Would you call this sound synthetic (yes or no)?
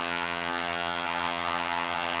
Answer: yes